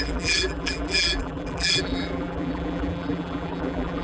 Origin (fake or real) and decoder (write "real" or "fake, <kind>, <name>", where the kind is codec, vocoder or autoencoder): fake, vocoder, BigVGAN v2